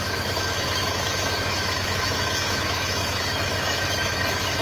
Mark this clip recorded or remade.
remade